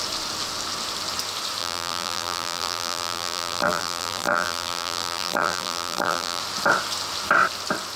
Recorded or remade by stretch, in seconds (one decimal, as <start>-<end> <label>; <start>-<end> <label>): 0.0-1.6 recorded; 1.6-6.4 remade; 6.4-8.0 recorded